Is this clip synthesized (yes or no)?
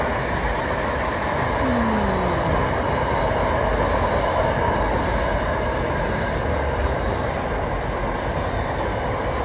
no